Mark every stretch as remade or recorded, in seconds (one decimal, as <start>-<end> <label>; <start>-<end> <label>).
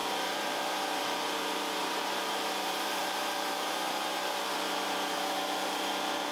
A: 0.0-6.3 remade